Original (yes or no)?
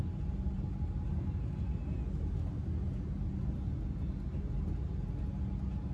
yes